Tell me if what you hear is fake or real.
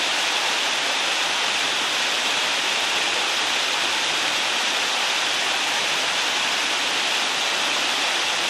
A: real